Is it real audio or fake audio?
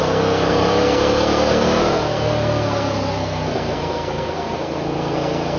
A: fake